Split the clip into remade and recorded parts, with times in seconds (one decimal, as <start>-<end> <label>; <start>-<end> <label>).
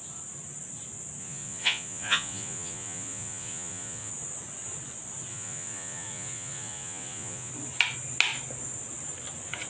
0.0-1.2 recorded; 1.2-4.1 remade; 4.1-5.3 recorded; 5.3-7.5 remade; 7.5-9.7 recorded